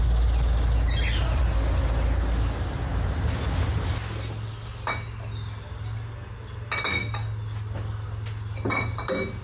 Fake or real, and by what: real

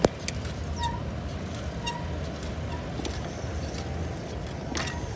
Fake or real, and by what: real